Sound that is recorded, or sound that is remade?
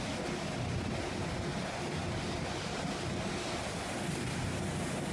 recorded